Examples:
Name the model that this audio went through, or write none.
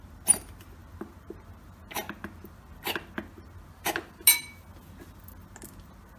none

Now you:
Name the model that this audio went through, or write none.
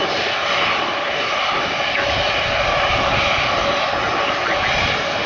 none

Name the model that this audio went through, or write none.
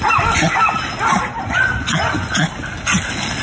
none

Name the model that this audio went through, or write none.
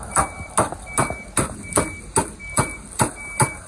none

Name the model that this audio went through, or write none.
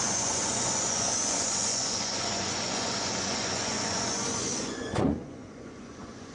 vocoder, Vocos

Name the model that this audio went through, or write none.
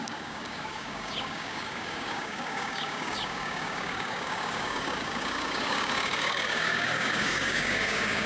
codec, DAC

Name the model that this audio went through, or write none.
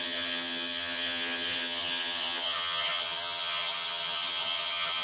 vocoder, HiFi-GAN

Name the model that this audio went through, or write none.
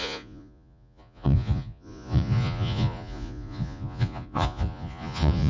vocoder, Vocos